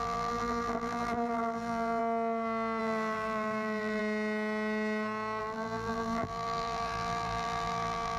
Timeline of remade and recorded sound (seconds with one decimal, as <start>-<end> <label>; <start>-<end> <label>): 0.0-2.0 remade; 2.0-2.8 recorded; 2.8-4.0 remade; 4.0-5.4 recorded; 5.4-8.2 remade